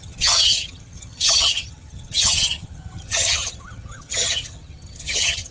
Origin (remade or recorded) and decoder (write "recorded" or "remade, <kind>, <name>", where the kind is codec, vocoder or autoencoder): remade, vocoder, HiFi-GAN